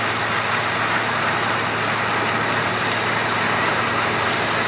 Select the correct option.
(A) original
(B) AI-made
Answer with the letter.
A